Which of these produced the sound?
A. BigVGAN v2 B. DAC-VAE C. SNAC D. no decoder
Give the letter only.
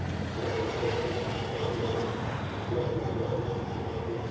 D